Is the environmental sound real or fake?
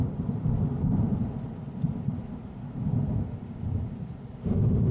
real